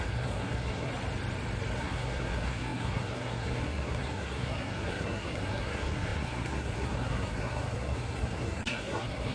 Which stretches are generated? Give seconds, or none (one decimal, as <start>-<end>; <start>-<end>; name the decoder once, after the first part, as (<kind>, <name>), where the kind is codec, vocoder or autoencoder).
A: 0.0-0.9 (codec, SNAC); 1.8-9.3

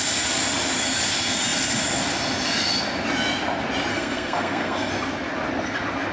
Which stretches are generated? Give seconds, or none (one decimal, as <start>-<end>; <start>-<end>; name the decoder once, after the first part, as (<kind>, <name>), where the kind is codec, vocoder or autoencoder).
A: 3.9-4.9 (codec, SNAC)

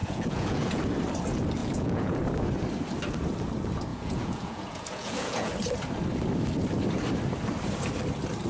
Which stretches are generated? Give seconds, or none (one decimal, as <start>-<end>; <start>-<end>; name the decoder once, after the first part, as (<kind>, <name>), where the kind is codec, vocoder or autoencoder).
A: 0.0-0.8 (vocoder, Vocos); 1.6-2.2; 3.9-5.5

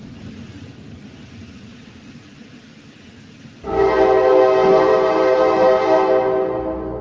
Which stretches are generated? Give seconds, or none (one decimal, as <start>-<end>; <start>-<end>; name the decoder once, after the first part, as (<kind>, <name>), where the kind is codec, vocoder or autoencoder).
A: none

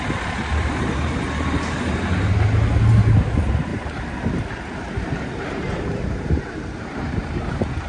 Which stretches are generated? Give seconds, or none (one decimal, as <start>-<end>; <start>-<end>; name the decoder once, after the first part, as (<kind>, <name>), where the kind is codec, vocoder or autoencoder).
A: 0.5-2.0 (vocoder, BigVGAN v2); 3.7-7.5